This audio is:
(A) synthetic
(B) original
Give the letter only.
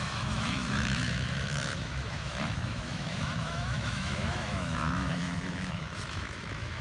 A